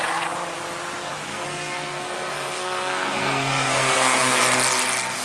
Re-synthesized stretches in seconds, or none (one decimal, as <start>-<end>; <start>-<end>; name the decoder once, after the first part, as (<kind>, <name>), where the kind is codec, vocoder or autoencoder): 1.3-4.4 (codec, SNAC)